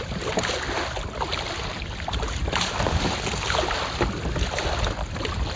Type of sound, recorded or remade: recorded